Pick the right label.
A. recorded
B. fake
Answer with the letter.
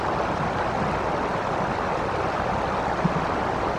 A